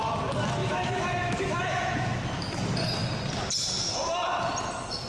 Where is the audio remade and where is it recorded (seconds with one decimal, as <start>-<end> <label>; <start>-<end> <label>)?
0.0-0.6 recorded; 0.6-2.6 remade; 2.6-5.1 recorded